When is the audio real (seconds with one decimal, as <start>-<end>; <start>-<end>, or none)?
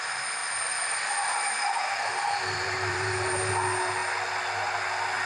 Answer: 0.0-0.4; 3.5-5.3